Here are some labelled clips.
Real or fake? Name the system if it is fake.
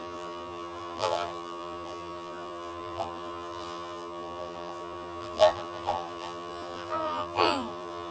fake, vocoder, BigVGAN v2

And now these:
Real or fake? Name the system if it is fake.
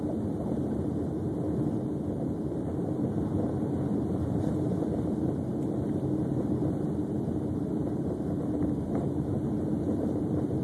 fake, vocoder, BigVGAN v2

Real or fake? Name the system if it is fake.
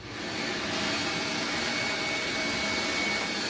real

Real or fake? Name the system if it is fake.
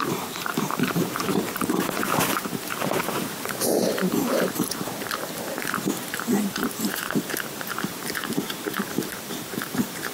fake, vocoder, BigVGAN v2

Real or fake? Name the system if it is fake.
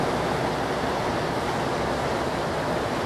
real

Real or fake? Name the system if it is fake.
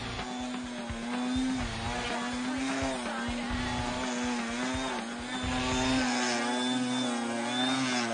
real